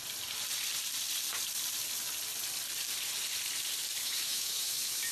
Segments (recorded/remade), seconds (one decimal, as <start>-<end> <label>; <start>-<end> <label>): 0.0-4.0 recorded; 4.0-5.1 remade